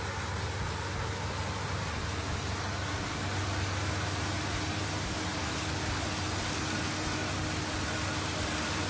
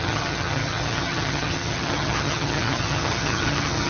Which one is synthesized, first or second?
second